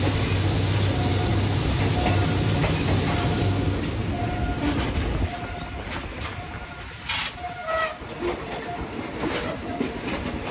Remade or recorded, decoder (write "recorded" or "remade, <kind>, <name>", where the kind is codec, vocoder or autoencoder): recorded